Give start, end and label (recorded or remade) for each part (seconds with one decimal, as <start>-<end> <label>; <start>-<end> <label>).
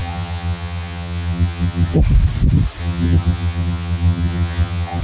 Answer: 0.0-2.0 remade; 2.0-2.8 recorded; 2.8-5.0 remade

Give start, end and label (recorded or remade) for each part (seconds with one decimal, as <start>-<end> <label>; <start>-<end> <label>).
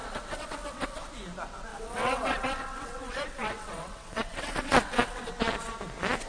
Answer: 0.0-1.1 remade; 1.1-1.7 recorded; 1.7-5.3 remade; 5.3-6.3 recorded